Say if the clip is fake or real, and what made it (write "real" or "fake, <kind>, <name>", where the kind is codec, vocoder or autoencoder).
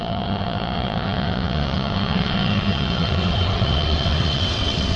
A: fake, vocoder, WaveNeXt